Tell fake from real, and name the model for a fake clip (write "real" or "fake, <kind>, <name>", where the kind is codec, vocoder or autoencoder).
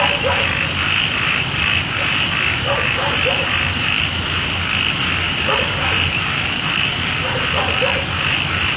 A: real